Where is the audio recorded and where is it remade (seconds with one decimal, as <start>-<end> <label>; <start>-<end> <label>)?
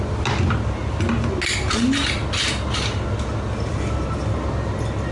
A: 0.0-5.1 recorded